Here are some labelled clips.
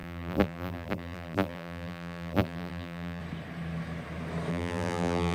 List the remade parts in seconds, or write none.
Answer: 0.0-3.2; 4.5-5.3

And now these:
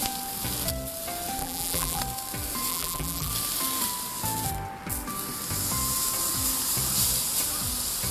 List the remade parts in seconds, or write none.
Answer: 1.4-2.0; 2.7-3.3

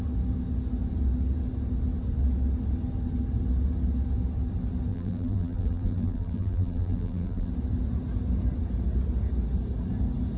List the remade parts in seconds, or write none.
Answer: 4.9-7.5

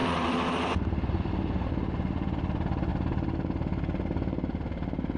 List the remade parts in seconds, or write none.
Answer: 0.0-1.3